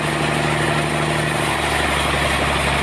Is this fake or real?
real